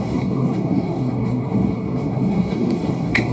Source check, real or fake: fake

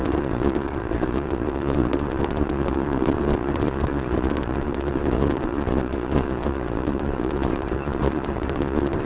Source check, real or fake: fake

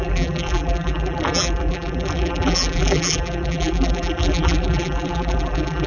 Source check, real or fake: fake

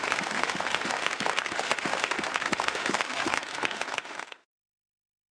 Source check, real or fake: fake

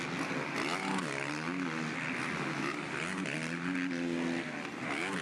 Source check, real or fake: real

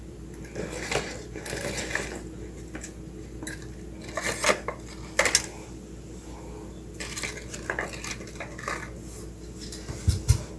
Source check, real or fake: real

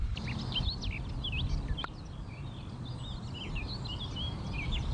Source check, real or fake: real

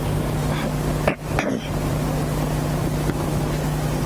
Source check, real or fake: real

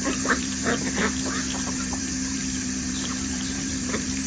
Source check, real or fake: fake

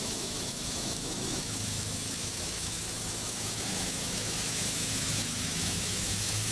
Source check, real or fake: fake